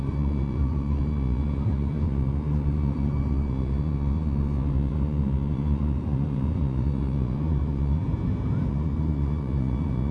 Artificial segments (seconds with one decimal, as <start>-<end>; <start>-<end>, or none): 0.0-8.0; 8.7-10.1